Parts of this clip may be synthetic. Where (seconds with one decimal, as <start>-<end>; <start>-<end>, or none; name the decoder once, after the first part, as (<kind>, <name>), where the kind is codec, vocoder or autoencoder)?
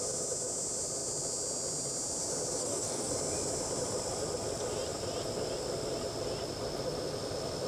2.6-3.1 (codec, DAC)